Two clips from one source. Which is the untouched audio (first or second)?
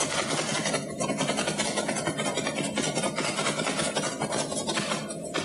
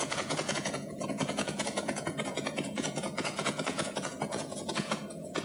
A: first